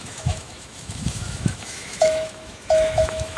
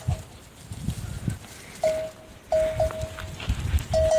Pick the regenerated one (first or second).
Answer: first